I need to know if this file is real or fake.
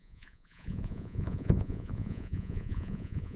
fake